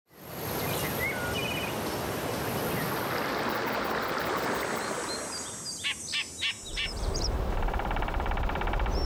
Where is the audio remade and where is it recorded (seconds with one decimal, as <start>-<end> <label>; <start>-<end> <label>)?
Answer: 0.0-6.7 recorded; 6.7-8.3 remade; 8.3-9.0 recorded